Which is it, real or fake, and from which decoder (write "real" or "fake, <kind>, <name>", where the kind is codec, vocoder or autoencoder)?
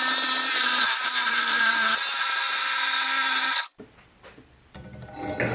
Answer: fake, vocoder, BigVGAN v2